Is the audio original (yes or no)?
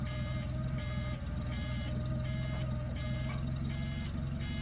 yes